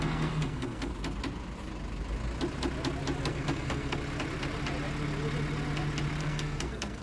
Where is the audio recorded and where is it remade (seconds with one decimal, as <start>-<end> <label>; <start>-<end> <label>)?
0.0-0.9 remade; 0.9-3.2 recorded; 3.2-4.0 remade; 4.0-6.2 recorded; 6.2-7.0 remade